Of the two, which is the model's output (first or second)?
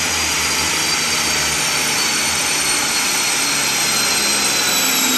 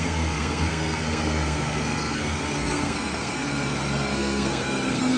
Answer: second